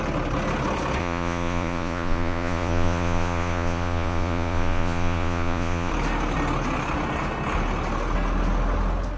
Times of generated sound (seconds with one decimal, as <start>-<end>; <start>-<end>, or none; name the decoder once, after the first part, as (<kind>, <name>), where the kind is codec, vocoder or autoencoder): 1.0-5.9 (vocoder, Vocos)